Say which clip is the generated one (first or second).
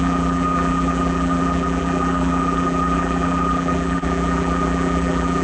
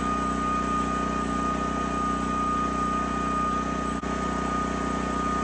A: first